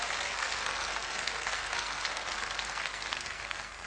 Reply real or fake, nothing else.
fake